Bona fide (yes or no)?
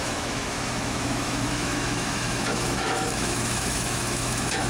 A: no